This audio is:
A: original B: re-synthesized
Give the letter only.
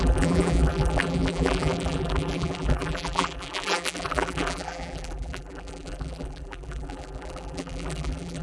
B